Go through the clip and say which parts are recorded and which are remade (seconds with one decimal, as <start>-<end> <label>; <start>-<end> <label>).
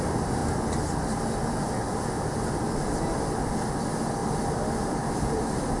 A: 0.0-5.8 recorded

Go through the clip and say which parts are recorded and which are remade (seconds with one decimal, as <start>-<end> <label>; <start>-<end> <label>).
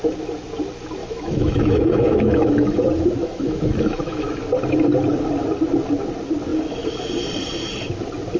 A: 0.0-1.0 recorded; 1.0-2.8 remade; 2.8-3.2 recorded; 3.2-4.4 remade; 4.4-8.4 recorded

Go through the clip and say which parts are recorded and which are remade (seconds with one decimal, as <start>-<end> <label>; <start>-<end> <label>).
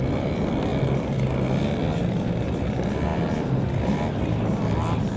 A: 0.0-5.2 recorded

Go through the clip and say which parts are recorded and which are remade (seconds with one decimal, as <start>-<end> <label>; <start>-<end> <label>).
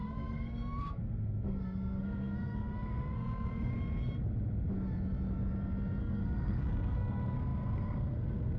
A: 0.0-3.7 remade; 3.7-6.0 recorded; 6.0-8.6 remade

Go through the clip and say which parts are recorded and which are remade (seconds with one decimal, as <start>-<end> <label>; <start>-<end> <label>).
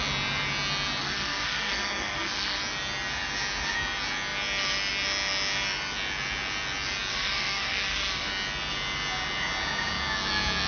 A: 0.0-1.0 recorded; 1.0-2.6 remade; 2.6-7.1 recorded; 7.1-8.3 remade; 8.3-10.7 recorded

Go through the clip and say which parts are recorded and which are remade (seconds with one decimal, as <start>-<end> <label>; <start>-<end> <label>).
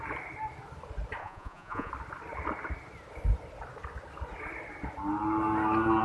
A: 0.0-1.2 recorded; 1.2-1.9 remade; 1.9-6.0 recorded